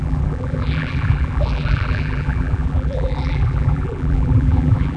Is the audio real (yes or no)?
no